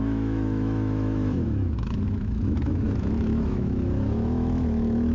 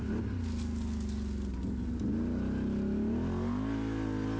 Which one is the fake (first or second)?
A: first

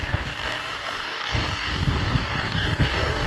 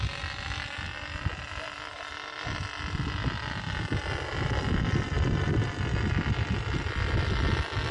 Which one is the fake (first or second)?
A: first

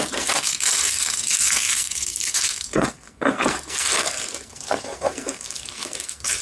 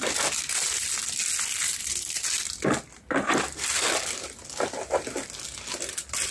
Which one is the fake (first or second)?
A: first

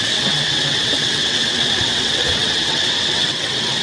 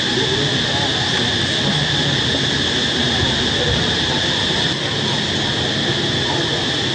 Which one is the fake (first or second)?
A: first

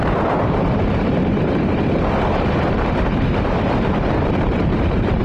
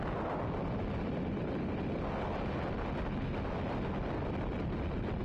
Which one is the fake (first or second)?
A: first